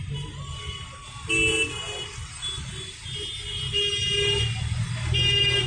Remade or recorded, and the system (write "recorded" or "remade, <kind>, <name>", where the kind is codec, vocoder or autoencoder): recorded